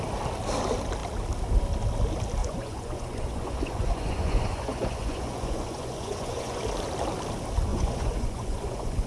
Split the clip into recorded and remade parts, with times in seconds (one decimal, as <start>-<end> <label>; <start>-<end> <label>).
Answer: 0.0-2.4 recorded; 2.4-6.6 remade; 6.6-7.7 recorded; 7.7-9.1 remade